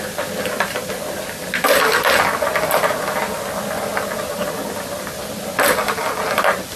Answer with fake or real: real